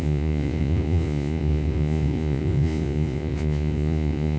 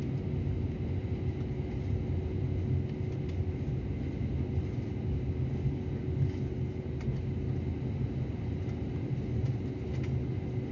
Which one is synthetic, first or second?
first